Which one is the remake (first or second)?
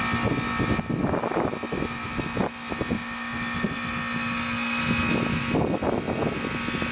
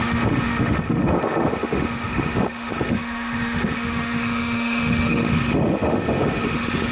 second